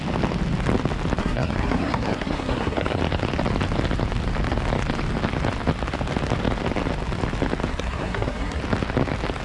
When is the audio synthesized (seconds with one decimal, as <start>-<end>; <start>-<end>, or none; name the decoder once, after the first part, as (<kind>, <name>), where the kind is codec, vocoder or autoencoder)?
1.2-3.0 (codec, SNAC); 7.7-8.6